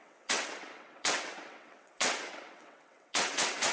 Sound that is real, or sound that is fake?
fake